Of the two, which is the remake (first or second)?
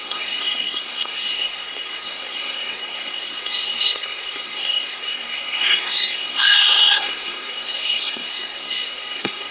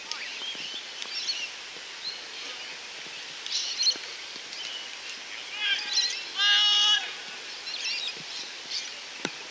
first